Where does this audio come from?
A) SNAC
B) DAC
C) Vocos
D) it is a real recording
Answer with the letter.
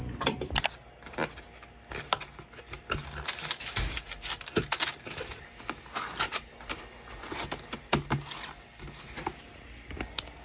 D